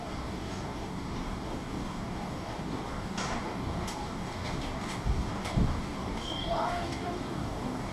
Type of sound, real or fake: fake